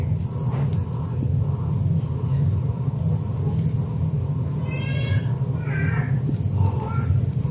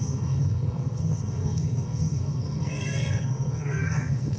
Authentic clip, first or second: first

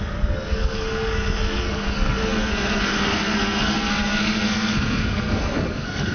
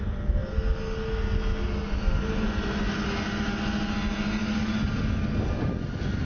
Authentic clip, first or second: second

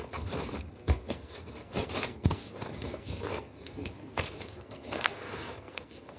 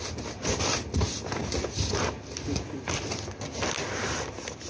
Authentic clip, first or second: second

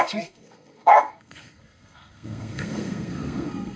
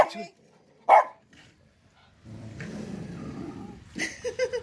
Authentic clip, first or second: second